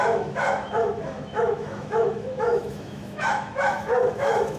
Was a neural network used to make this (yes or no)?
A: yes